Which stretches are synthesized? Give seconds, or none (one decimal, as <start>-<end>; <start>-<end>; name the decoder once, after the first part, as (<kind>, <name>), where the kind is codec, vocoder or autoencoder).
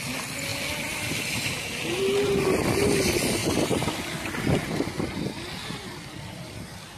none